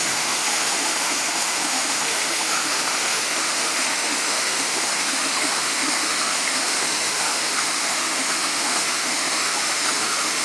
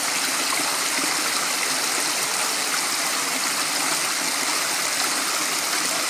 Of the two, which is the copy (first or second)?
first